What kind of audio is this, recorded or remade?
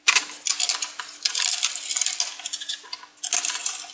recorded